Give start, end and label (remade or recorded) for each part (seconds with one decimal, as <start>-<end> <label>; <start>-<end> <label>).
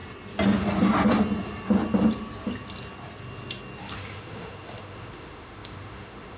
0.0-3.8 recorded; 3.8-6.4 remade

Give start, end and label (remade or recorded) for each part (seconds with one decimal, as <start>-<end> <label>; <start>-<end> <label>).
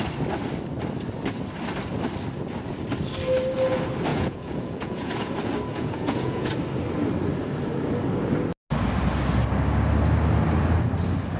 0.0-4.1 recorded; 4.1-5.3 remade; 5.3-5.7 recorded; 5.7-6.5 remade; 6.5-11.4 recorded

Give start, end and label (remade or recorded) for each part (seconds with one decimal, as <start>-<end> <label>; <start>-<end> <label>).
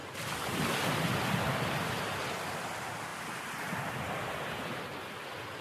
0.0-5.6 recorded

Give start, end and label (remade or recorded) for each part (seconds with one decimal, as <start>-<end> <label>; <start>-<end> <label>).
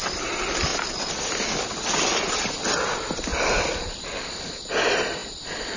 0.0-5.8 recorded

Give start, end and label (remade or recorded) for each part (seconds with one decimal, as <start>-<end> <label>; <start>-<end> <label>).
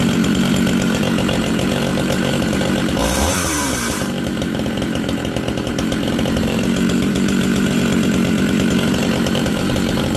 0.0-10.2 remade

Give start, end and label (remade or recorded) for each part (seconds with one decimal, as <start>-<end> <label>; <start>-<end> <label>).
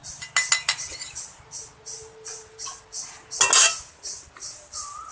0.0-5.1 recorded